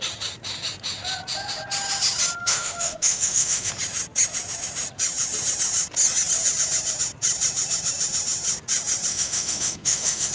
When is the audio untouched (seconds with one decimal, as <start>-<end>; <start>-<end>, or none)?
0.0-2.4; 3.7-9.1